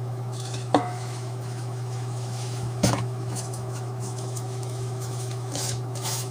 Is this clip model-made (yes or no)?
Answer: yes